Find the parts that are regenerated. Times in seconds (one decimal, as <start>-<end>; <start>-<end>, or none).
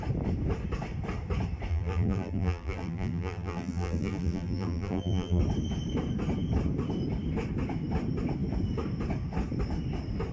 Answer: 1.7-5.4